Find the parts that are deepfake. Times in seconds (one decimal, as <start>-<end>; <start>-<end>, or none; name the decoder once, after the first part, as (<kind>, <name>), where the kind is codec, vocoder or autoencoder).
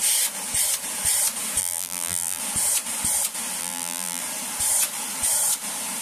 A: 1.6-2.4 (vocoder, BigVGAN v2); 3.6-4.2